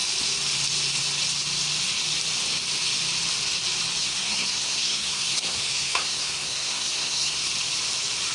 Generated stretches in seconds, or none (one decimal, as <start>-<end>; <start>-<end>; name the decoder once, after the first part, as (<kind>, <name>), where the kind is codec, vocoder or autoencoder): 4.0-7.5 (codec, SNAC)